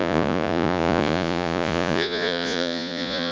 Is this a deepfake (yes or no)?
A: yes